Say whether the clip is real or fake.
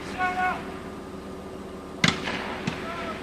real